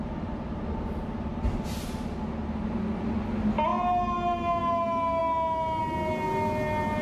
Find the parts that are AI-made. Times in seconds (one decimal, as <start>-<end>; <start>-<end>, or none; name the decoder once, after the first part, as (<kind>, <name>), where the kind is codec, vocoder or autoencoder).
3.7-4.6 (vocoder, BigVGAN v2)